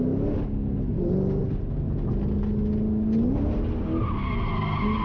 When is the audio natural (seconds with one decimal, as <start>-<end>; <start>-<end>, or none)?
0.0-5.0